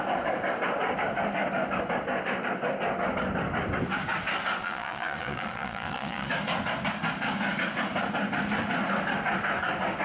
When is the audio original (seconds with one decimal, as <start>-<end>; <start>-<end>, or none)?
0.0-4.6; 6.3-10.0